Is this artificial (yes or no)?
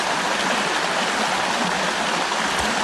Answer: no